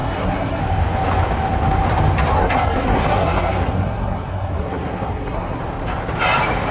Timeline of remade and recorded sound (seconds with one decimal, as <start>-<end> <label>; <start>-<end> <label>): 0.0-0.6 remade; 0.6-2.4 recorded; 2.4-5.6 remade; 5.6-6.7 recorded